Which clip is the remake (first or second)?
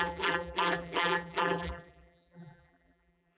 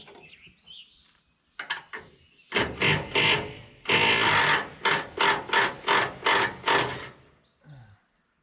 first